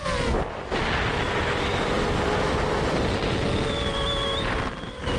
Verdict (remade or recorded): recorded